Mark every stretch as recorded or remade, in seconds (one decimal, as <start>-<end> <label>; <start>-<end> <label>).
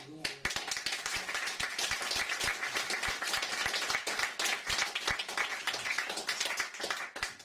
0.0-7.4 recorded